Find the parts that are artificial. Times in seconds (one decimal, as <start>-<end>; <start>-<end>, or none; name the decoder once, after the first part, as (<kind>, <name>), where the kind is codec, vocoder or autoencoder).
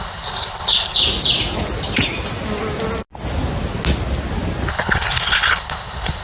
0.0-1.0 (codec, HILCodec); 4.7-6.2